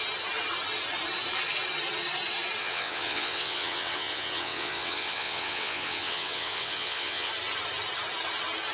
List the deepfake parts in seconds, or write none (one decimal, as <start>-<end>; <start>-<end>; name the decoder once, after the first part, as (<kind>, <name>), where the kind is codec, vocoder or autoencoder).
2.6-7.3 (vocoder, WaveNeXt)